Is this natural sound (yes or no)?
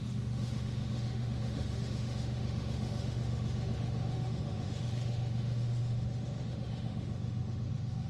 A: no